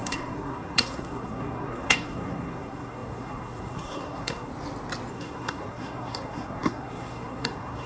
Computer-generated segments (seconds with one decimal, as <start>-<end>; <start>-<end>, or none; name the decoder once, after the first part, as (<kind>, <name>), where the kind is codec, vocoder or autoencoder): 0.0-4.5 (codec, SNAC); 5.1-7.9

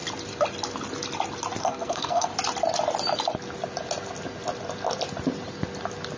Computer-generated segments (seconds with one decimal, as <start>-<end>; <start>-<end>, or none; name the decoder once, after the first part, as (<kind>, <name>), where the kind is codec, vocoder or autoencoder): 1.6-2.3 (codec, SNAC)

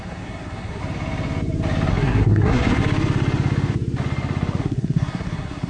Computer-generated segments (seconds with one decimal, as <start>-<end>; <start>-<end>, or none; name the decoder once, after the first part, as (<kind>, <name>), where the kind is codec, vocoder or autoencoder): 0.0-0.8 (codec, SNAC); 1.9-2.8; 4.6-5.7

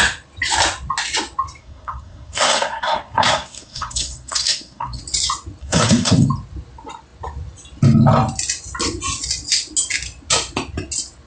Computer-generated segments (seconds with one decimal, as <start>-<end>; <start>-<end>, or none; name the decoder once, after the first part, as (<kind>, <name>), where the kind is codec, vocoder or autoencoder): 1.6-5.0 (codec, SNAC); 5.6-6.3

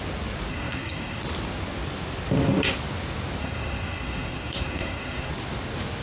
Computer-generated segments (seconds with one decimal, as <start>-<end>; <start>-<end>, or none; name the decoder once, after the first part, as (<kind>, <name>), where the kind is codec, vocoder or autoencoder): 0.5-1.2 (codec, SNAC); 3.4-5.3